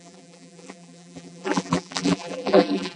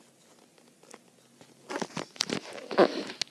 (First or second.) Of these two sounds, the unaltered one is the second